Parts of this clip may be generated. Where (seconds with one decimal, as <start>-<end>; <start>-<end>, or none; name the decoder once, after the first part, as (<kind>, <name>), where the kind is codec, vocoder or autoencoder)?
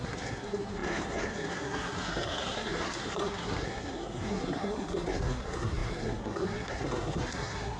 0.0-7.8 (codec, SNAC)